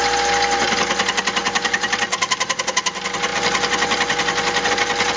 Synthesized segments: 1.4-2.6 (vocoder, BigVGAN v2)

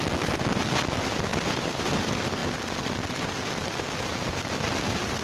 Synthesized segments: 1.3-1.9 (vocoder, BigVGAN v2)

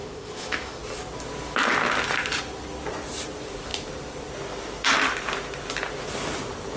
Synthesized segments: 0.0-0.8 (autoencoder, DAC-VAE)